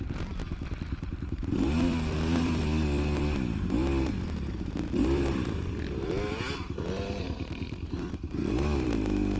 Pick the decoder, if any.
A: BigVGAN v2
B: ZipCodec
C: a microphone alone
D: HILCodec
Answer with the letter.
A